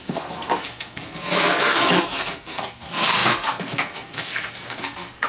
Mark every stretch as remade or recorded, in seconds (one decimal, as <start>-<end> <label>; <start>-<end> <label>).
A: 0.0-5.3 remade